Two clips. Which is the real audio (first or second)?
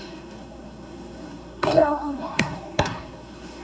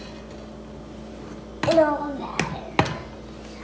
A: second